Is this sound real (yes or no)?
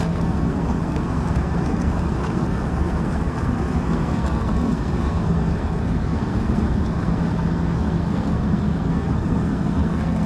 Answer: no